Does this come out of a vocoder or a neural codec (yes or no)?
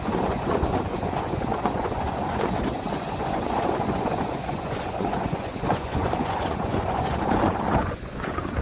yes